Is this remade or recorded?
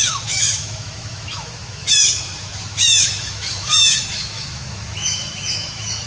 remade